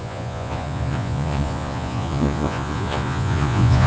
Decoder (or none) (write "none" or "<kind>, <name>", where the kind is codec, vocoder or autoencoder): vocoder, Vocos